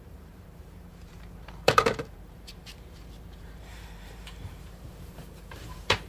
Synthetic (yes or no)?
yes